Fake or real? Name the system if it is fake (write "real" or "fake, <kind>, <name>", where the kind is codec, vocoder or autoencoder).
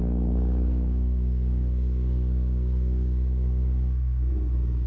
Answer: fake, codec, SNAC